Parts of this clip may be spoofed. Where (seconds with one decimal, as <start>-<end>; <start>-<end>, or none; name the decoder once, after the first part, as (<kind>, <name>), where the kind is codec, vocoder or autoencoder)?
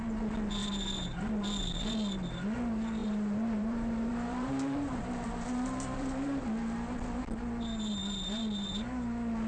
3.0-6.4 (vocoder, BigVGAN v2)